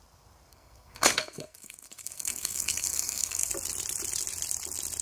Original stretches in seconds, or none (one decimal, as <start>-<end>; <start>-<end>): 0.0-0.5; 3.5-5.0

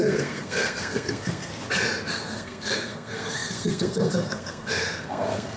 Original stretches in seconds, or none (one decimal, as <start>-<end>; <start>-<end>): 1.5-2.1